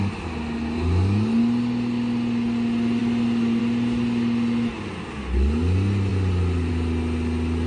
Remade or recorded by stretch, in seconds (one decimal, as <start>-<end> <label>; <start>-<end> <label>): 0.0-7.7 recorded